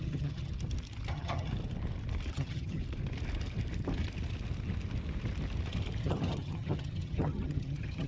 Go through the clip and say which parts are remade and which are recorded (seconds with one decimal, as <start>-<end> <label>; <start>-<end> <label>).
0.0-0.5 remade; 0.5-1.1 recorded; 1.1-1.5 remade; 1.5-2.3 recorded; 2.3-2.8 remade; 2.8-6.0 recorded; 6.0-8.1 remade